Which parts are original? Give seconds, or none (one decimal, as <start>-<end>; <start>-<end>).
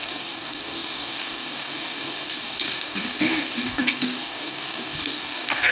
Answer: none